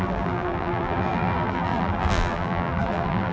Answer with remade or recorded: remade